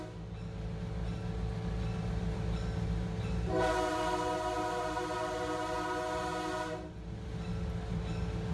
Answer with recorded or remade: recorded